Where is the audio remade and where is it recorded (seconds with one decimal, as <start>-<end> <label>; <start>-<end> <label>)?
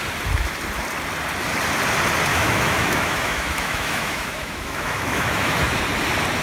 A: 0.0-2.3 recorded; 2.3-5.8 remade; 5.8-6.4 recorded